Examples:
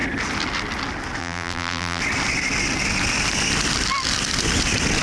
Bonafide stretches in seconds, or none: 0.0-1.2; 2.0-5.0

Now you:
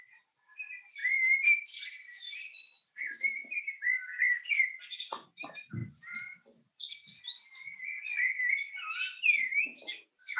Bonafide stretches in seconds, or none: 5.8-9.6

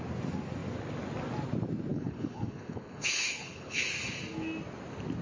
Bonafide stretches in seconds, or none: 0.0-1.9; 3.9-5.2

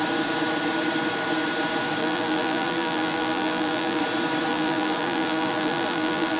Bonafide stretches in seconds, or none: 0.0-2.0; 4.0-4.5

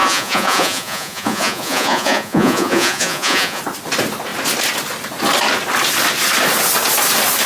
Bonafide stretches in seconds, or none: 3.6-7.5

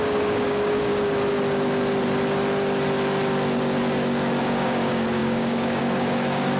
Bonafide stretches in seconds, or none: 0.9-4.4

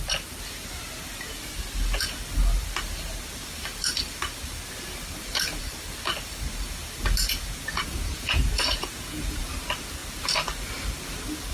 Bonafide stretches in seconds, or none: 0.0-7.2; 9.4-11.5

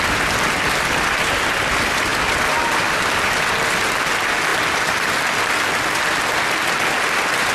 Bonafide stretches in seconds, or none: 0.0-2.1; 2.8-4.5; 6.2-7.5